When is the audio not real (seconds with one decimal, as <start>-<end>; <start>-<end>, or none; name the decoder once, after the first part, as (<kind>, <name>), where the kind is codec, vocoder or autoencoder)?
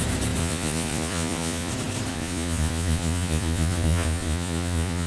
0.4-1.7 (vocoder, Vocos); 2.1-5.1